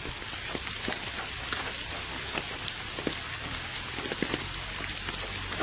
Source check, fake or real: real